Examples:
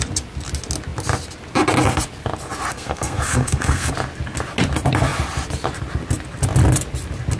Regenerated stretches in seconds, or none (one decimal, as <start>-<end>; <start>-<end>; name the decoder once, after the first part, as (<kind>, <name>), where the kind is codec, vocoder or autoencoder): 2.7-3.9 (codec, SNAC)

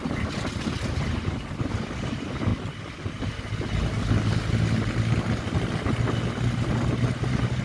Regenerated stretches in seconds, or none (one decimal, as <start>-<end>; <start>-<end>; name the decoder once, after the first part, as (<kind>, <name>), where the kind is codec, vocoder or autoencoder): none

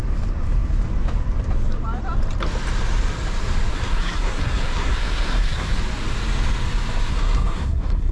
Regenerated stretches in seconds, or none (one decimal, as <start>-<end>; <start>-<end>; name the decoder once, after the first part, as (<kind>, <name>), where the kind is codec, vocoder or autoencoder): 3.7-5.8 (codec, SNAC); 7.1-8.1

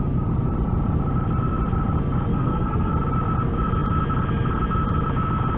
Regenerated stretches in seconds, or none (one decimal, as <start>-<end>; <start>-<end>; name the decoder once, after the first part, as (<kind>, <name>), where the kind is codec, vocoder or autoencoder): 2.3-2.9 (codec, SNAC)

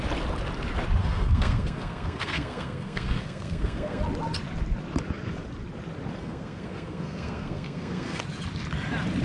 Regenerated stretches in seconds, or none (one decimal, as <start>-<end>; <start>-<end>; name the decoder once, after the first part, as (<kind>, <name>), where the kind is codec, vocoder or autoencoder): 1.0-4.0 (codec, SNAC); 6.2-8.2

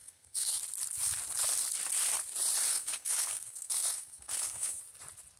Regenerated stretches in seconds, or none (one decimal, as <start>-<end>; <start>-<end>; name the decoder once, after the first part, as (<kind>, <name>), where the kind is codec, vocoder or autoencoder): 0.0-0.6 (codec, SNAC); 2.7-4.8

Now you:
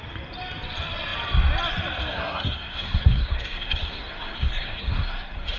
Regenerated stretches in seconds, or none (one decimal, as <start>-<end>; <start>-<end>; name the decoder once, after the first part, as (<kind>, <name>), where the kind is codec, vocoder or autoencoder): 2.1-5.6 (codec, SNAC)

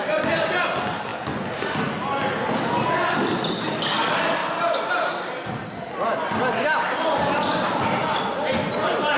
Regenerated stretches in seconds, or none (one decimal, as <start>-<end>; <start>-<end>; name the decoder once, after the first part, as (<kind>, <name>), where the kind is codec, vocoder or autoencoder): none